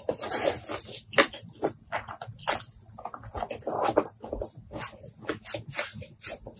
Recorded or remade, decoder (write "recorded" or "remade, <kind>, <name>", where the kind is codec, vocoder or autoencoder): remade, vocoder, BigVGAN v2